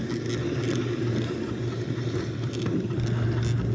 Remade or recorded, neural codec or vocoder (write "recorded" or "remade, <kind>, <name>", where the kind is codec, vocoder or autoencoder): recorded